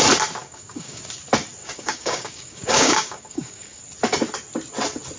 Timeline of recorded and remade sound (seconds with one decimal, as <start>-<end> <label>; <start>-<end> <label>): 0.0-0.4 recorded; 0.4-1.0 remade; 1.0-1.6 recorded; 1.6-3.8 remade; 3.8-5.2 recorded